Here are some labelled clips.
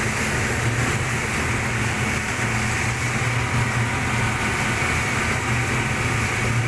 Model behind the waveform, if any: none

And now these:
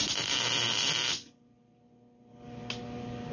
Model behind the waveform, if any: none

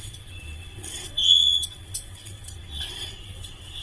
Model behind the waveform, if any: vocoder, WaveNeXt